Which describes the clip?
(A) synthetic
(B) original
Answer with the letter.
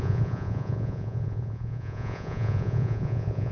A